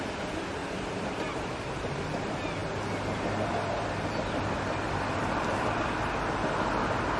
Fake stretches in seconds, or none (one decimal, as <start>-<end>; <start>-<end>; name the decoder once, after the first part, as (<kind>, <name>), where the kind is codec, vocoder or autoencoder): 0.6-2.0 (vocoder, BigVGAN v2)